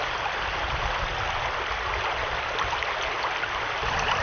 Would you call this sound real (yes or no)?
yes